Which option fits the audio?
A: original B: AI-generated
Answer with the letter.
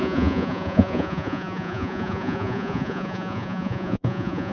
B